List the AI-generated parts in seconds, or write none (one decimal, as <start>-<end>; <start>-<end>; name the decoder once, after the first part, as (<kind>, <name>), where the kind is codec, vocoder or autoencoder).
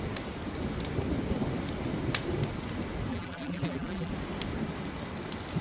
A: 3.1-4.1 (vocoder, BigVGAN v2)